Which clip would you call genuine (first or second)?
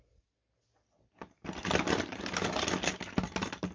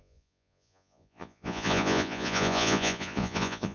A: first